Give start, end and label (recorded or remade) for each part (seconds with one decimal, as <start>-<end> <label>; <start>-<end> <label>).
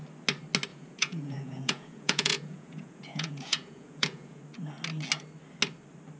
0.0-0.7 recorded; 0.7-4.4 remade; 4.4-6.2 recorded